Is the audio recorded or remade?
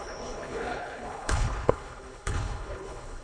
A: remade